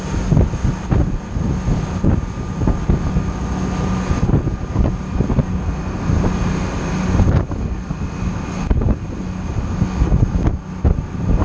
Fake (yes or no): no